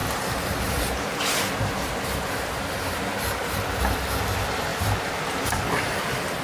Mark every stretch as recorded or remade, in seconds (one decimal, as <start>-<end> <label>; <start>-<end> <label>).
0.0-3.8 remade; 3.8-4.7 recorded; 4.7-6.0 remade; 6.0-6.4 recorded